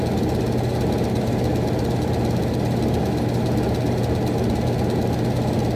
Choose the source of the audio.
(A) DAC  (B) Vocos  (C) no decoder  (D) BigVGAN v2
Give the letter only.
C